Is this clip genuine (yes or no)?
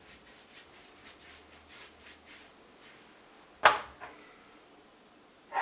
yes